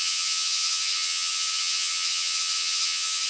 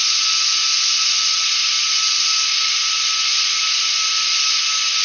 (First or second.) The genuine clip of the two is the second